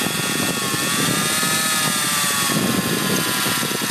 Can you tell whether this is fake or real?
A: real